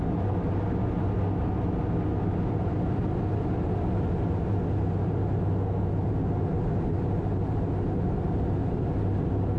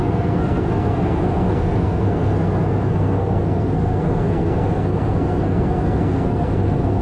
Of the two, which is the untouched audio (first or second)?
first